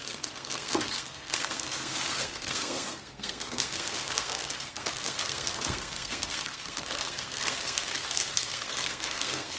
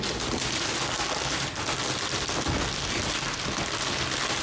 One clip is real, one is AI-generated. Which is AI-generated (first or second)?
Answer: first